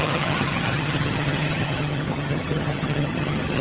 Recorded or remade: remade